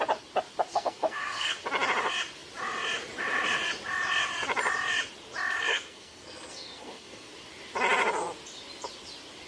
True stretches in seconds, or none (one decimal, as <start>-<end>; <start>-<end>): 0.0-0.7; 1.6-5.7; 7.3-9.5